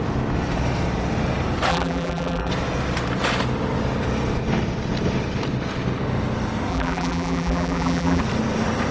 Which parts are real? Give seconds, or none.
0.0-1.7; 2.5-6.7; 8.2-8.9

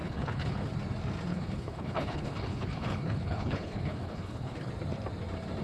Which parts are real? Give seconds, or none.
0.6-1.3; 4.7-5.6

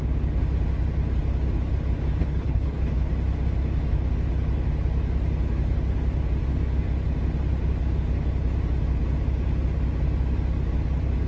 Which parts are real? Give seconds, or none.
0.0-2.2; 3.1-11.3